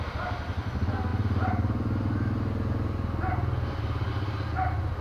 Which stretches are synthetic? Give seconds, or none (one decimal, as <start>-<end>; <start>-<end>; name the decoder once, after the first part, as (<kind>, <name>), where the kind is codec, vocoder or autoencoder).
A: none